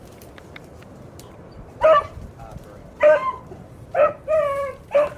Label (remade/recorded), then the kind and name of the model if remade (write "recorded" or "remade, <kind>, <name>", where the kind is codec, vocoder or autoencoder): remade, vocoder, BigVGAN v2